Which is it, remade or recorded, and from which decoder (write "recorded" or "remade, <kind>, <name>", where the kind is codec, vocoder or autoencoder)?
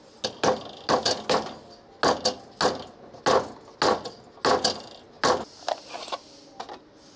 recorded